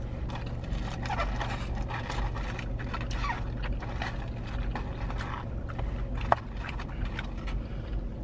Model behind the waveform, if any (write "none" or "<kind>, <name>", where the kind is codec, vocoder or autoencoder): none